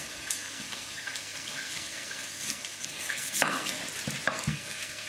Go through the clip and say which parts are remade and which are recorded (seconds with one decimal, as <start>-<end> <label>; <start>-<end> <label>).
0.0-3.8 remade; 3.8-4.3 recorded; 4.3-5.1 remade